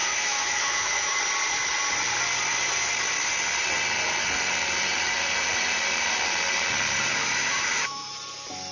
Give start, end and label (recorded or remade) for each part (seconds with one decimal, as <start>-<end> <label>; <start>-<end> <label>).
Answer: 0.0-1.2 remade; 1.2-7.1 recorded; 7.1-8.1 remade; 8.1-8.7 recorded